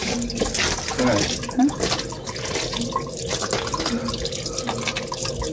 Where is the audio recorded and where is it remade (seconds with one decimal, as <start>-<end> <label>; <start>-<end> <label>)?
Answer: 0.0-5.5 recorded